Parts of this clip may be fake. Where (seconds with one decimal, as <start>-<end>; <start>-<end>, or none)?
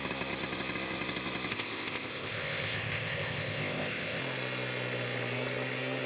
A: 1.5-4.2